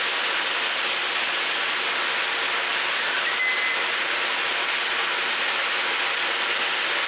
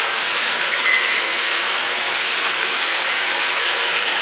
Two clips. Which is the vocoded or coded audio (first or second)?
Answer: second